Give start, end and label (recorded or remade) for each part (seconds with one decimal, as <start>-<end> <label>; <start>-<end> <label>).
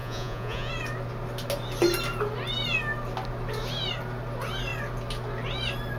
0.0-0.7 remade; 0.7-6.0 recorded